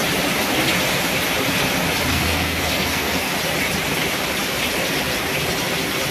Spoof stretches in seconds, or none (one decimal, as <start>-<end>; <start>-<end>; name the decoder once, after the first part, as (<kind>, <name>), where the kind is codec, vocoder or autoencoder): 2.1-3.3 (codec, SNAC)